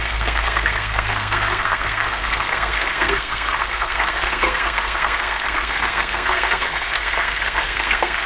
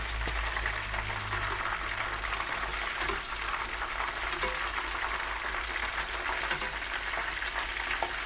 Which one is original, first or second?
second